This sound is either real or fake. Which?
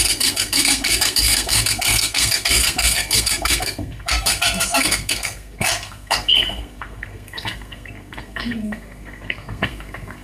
fake